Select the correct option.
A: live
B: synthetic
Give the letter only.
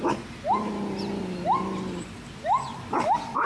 A